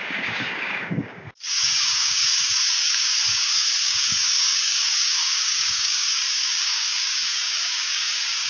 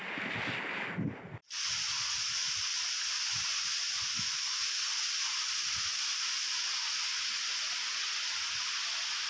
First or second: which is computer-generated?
first